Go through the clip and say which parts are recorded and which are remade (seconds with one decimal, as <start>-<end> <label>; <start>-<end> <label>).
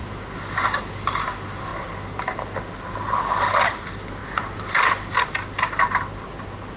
0.0-6.8 recorded